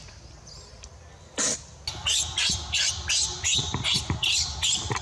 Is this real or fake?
real